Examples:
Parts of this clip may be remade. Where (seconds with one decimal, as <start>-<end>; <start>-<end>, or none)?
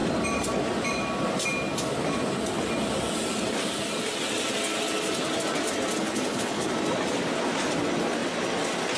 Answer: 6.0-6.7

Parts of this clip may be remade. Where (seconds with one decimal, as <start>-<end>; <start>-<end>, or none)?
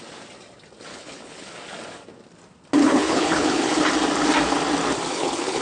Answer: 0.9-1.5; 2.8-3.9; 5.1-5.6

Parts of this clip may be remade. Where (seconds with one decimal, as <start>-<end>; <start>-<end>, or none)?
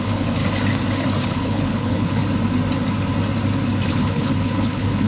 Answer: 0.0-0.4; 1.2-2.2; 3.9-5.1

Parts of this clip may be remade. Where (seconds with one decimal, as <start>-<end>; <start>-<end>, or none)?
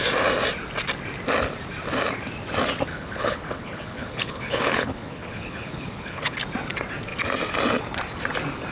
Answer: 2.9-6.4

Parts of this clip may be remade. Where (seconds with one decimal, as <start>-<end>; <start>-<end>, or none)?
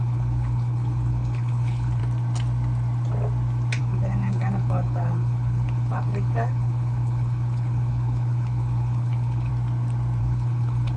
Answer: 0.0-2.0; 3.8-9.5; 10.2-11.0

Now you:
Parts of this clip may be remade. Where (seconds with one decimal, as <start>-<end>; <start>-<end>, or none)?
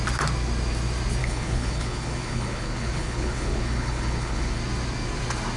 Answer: 1.2-4.6